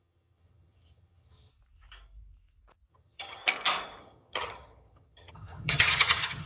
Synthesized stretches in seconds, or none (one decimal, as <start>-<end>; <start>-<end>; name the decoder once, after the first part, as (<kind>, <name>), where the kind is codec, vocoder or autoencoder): 0.0-1.5 (vocoder, HiFi-GAN); 2.9-3.4; 4.0-6.5